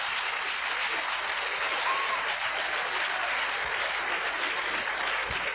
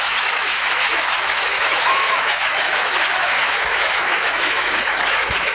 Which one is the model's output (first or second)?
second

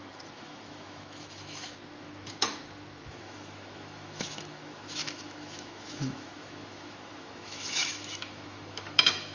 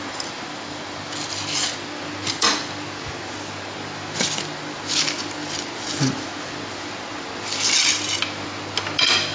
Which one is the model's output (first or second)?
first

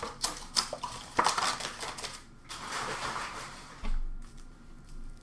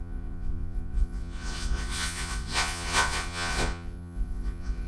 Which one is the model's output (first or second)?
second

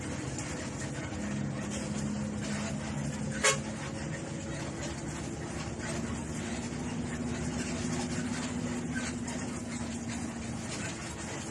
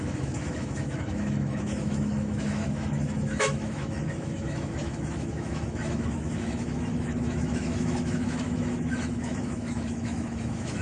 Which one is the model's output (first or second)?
second